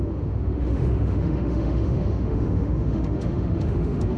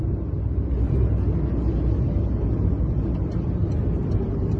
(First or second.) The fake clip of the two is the first